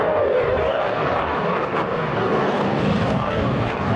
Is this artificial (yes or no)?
yes